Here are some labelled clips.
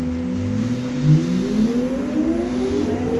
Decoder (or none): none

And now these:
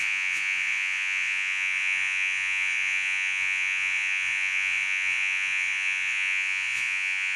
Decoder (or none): vocoder, Vocos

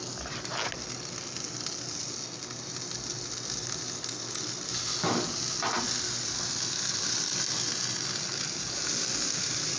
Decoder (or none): none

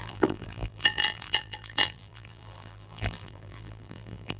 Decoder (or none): vocoder, BigVGAN v2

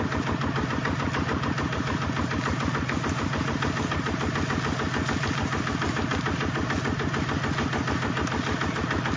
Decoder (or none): none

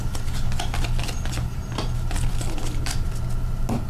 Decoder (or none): none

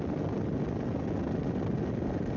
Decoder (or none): none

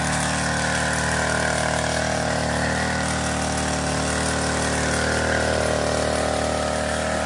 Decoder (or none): none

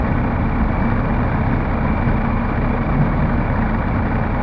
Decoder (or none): none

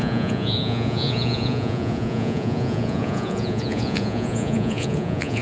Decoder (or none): vocoder, Vocos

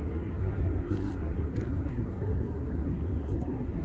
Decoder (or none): codec, SNAC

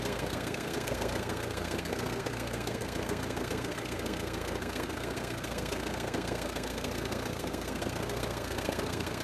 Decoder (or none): codec, SNAC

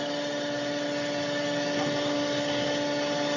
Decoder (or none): none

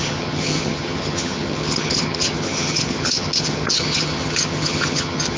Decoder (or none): vocoder, HiFi-GAN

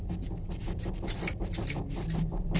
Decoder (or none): none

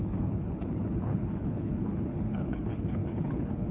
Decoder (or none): codec, HILCodec